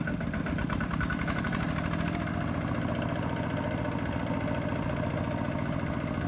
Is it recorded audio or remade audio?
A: recorded